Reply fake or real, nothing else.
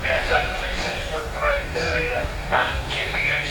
fake